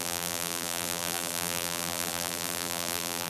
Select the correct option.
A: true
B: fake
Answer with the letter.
B